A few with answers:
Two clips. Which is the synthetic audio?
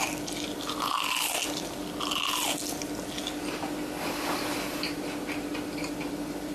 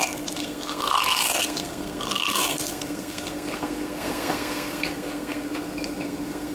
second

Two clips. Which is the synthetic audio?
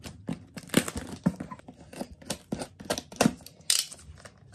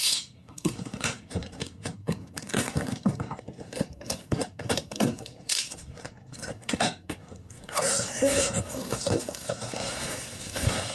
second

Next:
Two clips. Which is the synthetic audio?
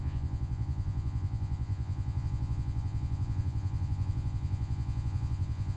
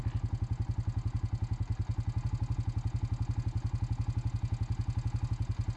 first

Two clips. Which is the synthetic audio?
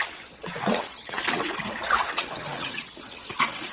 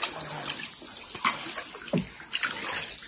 first